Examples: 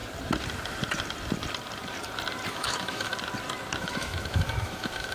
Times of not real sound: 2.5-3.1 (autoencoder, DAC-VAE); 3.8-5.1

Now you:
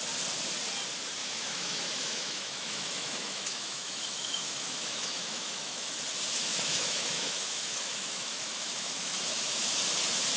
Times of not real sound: 1.2-5.9 (autoencoder, DAC-VAE); 6.5-9.8

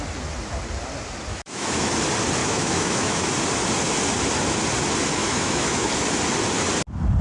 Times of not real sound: 1.3-1.9 (autoencoder, DAC-VAE); 2.4-3.2; 5.2-5.9

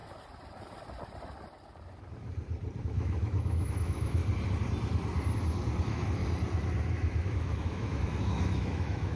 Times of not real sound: 2.8-4.2 (autoencoder, DAC-VAE); 5.8-6.2; 6.9-9.2

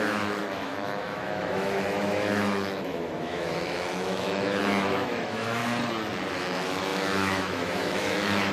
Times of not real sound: 0.0-5.6 (autoencoder, DAC-VAE); 6.3-8.5

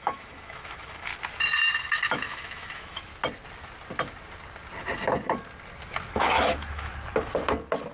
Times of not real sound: 0.0-1.1 (autoencoder, DAC-VAE); 1.9-3.1; 6.1-6.9

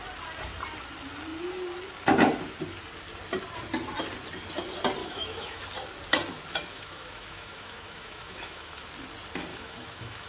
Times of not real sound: 5.0-5.6 (autoencoder, DAC-VAE); 6.7-8.8; 9.5-10.3

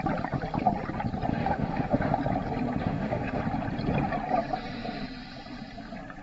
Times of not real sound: 1.3-2.2 (autoencoder, DAC-VAE); 2.8-3.4